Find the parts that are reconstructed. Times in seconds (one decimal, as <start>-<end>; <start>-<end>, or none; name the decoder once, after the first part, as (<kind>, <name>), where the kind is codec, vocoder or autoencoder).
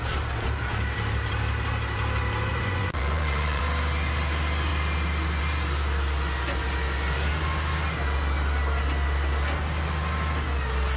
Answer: 2.5-3.6 (vocoder, Vocos)